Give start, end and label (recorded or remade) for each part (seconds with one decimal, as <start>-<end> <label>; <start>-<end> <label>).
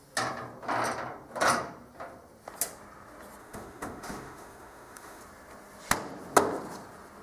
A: 0.0-3.4 recorded; 3.4-5.2 remade; 5.2-7.2 recorded